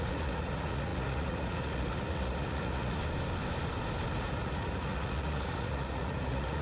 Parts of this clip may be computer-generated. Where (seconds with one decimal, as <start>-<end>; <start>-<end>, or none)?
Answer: 0.0-3.0; 4.2-6.6